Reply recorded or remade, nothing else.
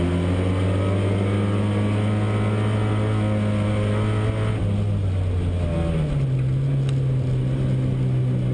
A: recorded